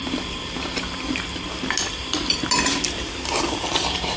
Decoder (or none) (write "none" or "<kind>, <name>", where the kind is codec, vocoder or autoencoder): none